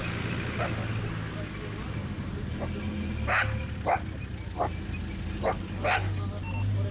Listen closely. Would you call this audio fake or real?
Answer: real